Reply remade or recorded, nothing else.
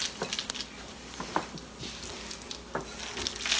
recorded